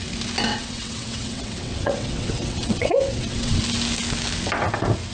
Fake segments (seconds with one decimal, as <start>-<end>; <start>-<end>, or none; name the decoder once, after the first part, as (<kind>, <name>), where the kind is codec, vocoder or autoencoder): 0.5-3.6 (vocoder, WaveNeXt)